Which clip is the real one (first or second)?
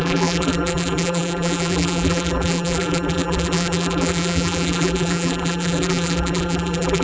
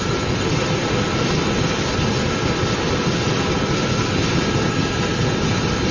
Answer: second